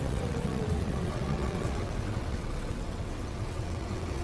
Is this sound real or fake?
fake